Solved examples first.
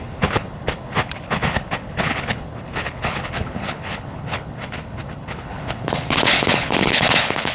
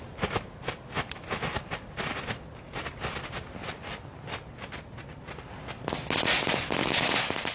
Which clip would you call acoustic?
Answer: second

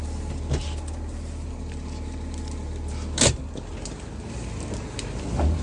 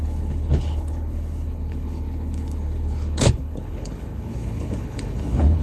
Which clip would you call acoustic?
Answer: first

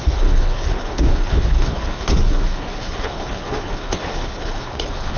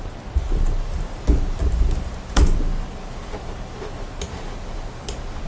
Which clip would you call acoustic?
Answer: second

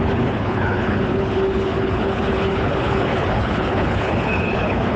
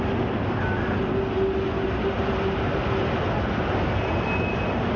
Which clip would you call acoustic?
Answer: second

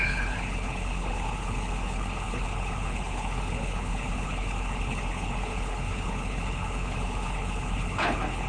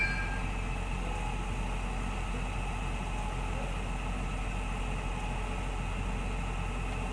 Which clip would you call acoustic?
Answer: second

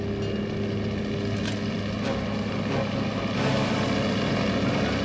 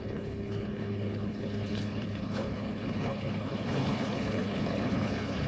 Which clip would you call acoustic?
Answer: first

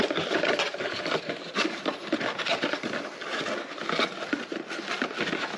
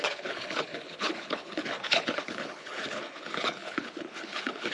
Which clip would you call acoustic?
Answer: first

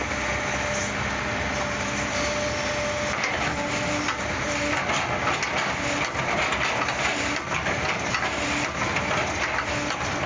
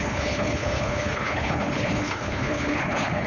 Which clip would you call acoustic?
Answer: first